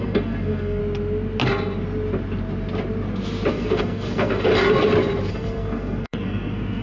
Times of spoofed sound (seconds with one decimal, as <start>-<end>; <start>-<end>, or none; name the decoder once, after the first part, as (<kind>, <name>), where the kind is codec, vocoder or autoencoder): 0.0-0.8 (codec, SNAC); 3.5-4.5; 5.3-6.8